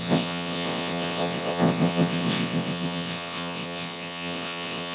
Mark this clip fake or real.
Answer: fake